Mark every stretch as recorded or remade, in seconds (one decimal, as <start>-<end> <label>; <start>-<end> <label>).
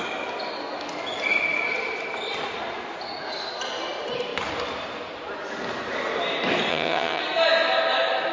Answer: 0.0-6.7 recorded; 6.7-7.2 remade; 7.2-8.3 recorded